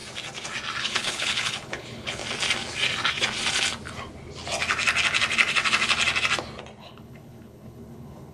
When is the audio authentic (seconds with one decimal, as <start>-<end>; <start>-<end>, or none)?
0.0-0.8; 2.2-6.8